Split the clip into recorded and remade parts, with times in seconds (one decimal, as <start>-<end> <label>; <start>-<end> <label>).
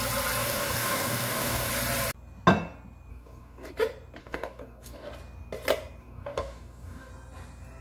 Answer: 0.0-0.4 recorded; 0.4-1.7 remade; 1.7-3.1 recorded; 3.1-3.7 remade; 3.7-4.2 recorded; 4.2-5.1 remade; 5.1-6.0 recorded; 6.0-7.1 remade; 7.1-7.8 recorded